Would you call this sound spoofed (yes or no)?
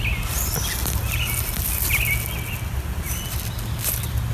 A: no